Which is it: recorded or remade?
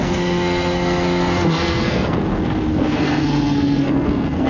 remade